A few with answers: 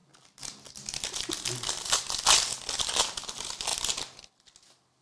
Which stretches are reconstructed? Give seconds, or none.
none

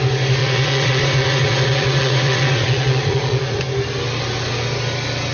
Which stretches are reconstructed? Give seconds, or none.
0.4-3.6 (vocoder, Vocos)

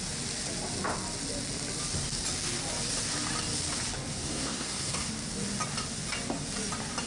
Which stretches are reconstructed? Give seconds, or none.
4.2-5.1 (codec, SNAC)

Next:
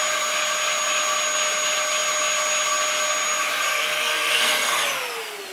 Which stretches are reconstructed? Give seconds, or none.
3.7-4.8 (codec, SNAC)

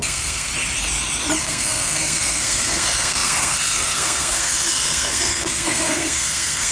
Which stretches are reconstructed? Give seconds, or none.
0.0-0.5 (codec, SNAC); 1.4-6.7